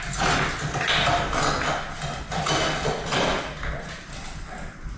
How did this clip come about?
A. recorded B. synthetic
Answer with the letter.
A